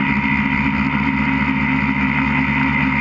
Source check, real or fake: real